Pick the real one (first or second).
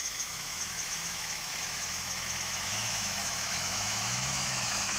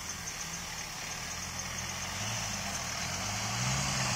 second